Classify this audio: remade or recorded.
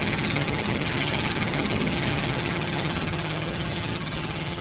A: remade